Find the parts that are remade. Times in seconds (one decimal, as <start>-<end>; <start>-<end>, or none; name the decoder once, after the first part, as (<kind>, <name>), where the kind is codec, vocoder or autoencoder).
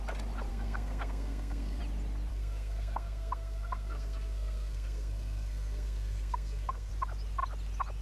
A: 0.5-1.8 (codec, SNAC); 2.3-6.9